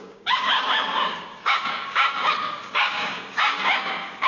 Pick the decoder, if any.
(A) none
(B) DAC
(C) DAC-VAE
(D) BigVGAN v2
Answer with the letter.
B